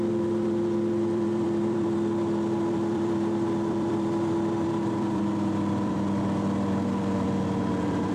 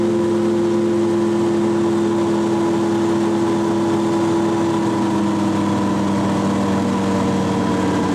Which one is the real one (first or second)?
second